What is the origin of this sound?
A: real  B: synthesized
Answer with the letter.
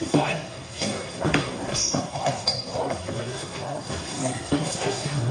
B